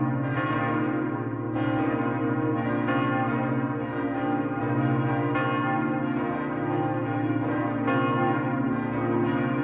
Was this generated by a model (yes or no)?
no